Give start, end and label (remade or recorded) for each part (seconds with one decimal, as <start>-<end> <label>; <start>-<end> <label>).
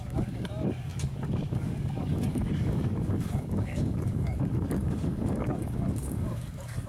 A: 0.0-6.9 remade